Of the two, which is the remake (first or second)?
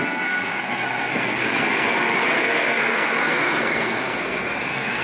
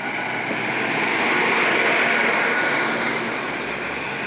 first